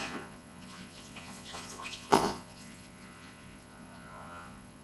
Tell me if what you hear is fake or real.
fake